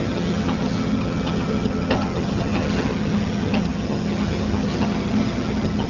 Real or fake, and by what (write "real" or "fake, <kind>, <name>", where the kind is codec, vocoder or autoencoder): fake, vocoder, HiFi-GAN